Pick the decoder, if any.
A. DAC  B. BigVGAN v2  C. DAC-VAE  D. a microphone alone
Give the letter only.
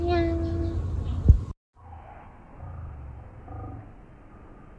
D